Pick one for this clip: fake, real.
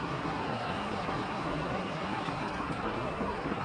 fake